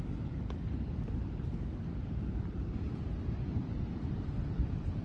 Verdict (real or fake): real